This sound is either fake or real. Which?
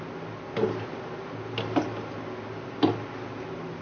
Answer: real